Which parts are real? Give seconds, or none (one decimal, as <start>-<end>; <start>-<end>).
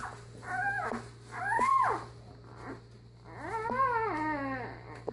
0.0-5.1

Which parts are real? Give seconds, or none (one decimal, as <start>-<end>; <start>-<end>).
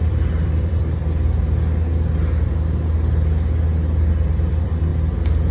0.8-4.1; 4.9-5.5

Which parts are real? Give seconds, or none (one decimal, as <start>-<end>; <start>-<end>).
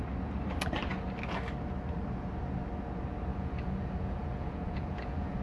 0.0-3.3